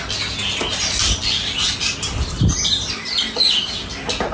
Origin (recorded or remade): recorded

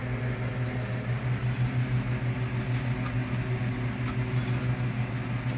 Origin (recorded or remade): recorded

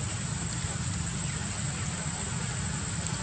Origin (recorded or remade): recorded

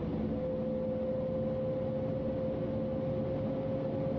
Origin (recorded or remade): recorded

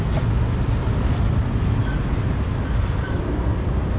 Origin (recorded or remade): recorded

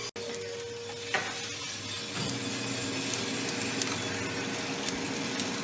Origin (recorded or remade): recorded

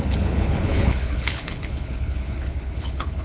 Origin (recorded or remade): remade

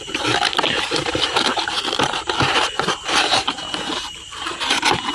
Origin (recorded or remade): remade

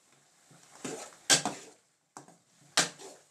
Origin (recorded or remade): recorded